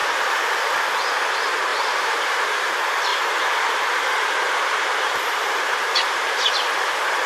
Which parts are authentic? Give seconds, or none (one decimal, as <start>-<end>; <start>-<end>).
0.0-1.7; 2.7-3.1; 6.5-7.3